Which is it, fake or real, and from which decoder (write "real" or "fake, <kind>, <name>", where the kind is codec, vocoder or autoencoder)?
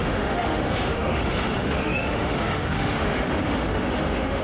fake, autoencoder, DAC-VAE